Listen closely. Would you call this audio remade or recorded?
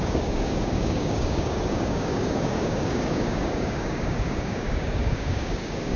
remade